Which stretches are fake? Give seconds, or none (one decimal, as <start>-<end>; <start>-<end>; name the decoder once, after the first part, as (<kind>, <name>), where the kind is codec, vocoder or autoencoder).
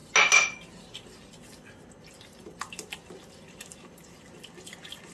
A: none